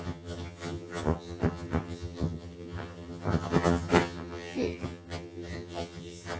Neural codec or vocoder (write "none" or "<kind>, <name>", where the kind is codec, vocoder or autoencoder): vocoder, HiFi-GAN